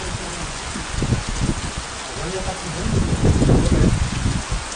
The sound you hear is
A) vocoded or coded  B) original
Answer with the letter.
A